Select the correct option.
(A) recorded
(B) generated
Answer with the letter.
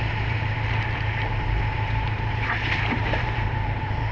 B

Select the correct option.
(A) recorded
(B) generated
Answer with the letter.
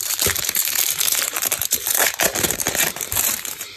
B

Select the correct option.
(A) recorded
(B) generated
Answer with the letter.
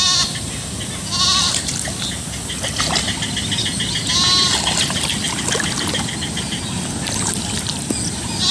A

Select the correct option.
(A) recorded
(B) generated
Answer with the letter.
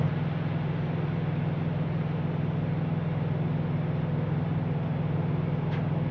A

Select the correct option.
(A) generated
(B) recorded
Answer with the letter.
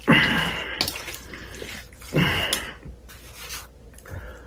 B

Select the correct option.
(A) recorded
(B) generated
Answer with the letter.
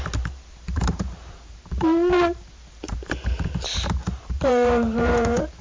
B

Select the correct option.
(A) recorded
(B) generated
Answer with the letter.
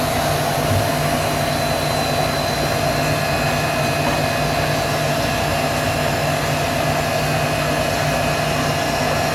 A